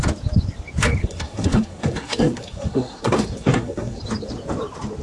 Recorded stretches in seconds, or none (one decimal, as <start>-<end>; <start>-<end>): 0.0-1.0; 4.0-5.0